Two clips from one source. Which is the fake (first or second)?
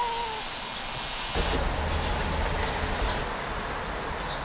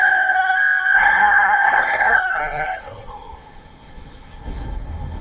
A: second